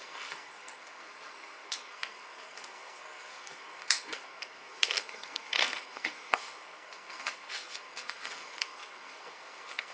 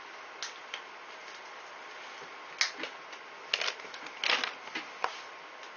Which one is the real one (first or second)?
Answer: second